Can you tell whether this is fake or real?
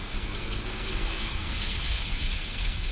fake